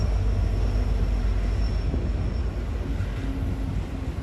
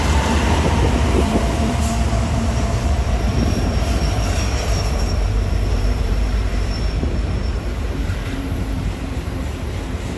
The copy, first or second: second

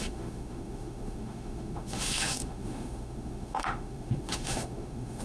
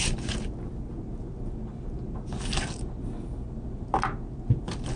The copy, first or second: first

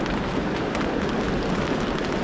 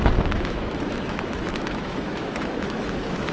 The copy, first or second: second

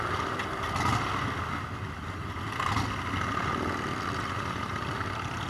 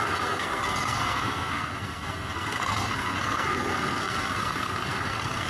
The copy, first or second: second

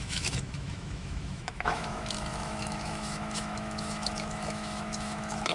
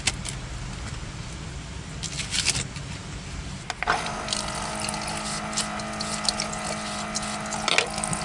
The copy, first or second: first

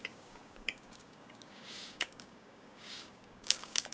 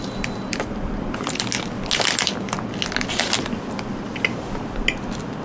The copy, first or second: first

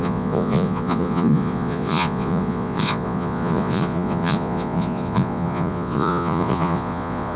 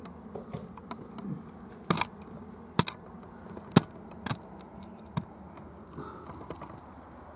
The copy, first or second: first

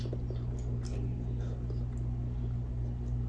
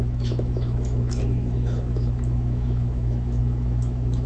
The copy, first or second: second